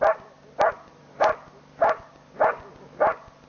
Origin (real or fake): real